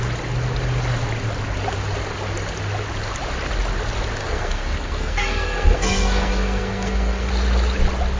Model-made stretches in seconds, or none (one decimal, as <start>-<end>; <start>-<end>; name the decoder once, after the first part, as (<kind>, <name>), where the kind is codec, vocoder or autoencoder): 4.2-7.3 (codec, SNAC)